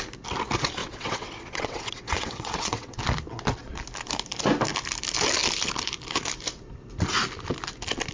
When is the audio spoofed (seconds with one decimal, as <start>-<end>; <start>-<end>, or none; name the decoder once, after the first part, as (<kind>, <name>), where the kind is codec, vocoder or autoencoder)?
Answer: 0.8-3.0 (vocoder, WaveNeXt)